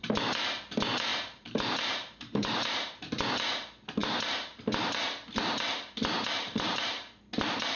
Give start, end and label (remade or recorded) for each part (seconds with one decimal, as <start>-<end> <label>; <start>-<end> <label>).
0.0-1.1 recorded; 1.1-3.0 remade; 3.0-4.0 recorded; 4.0-4.6 remade; 4.6-6.5 recorded; 6.5-7.2 remade; 7.2-7.8 recorded